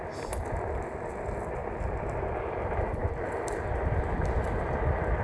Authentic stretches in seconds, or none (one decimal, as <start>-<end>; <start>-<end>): 0.0-5.2